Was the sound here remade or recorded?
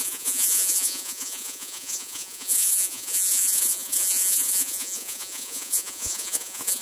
remade